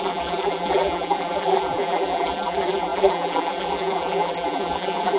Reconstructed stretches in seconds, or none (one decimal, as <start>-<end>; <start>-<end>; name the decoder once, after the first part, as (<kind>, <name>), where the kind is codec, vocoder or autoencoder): 0.0-5.2 (vocoder, BigVGAN v2)